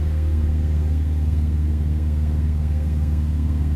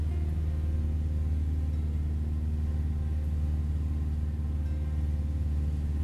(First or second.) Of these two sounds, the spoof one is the first